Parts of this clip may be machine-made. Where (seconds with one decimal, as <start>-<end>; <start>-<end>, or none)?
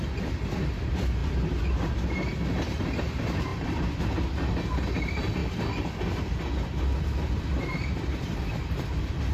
none